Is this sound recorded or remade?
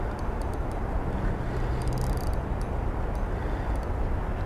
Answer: recorded